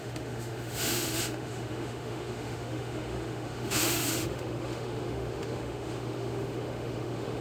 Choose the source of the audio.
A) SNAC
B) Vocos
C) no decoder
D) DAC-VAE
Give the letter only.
D